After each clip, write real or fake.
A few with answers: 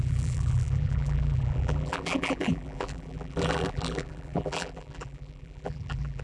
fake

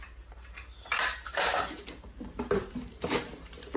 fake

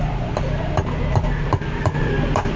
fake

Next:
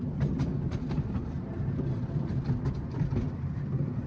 real